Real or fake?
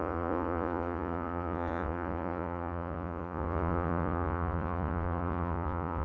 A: fake